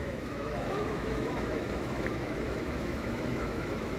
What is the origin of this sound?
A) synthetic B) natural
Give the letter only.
A